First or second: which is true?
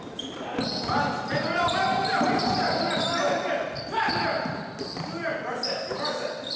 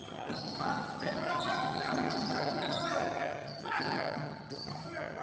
first